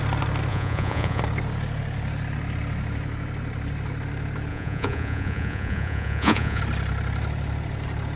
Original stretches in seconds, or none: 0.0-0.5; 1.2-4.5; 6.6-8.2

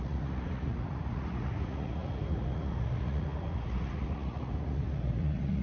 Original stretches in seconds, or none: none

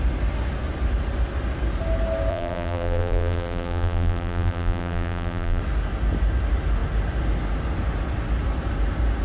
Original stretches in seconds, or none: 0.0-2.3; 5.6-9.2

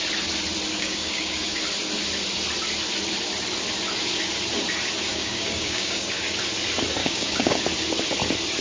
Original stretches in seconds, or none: 0.0-0.7; 1.6-5.1; 6.4-7.0; 7.6-8.6